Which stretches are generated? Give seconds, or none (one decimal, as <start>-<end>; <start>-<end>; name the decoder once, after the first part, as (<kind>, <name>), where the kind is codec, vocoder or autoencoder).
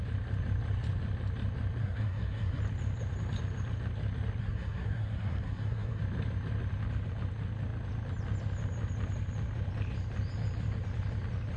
1.8-2.6 (codec, SNAC); 4.4-6.0